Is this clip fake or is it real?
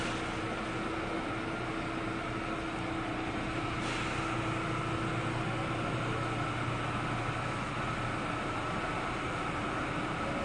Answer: real